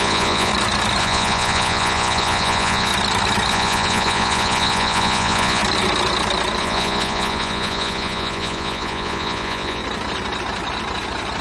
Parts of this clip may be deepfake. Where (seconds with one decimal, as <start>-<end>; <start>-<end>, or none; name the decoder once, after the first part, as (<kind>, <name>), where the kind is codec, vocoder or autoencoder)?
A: 0.0-0.5 (vocoder, Vocos); 1.0-2.9; 3.5-5.6; 6.6-9.8